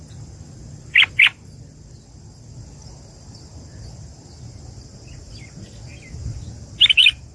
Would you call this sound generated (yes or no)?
no